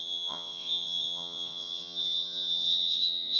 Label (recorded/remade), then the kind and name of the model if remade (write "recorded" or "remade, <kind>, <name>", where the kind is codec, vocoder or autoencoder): remade, vocoder, WaveNeXt